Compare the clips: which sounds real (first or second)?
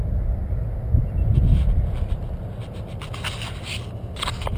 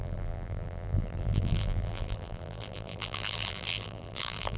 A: first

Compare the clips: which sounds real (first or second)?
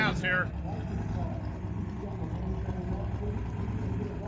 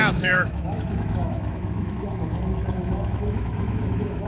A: first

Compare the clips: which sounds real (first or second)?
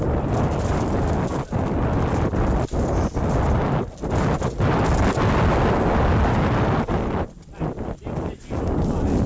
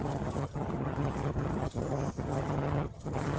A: first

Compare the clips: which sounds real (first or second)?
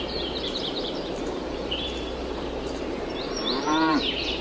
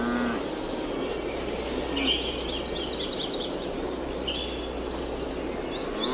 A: second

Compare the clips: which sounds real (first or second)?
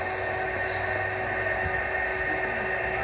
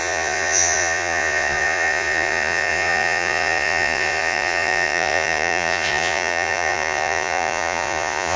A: first